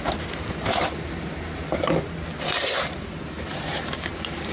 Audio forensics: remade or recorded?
remade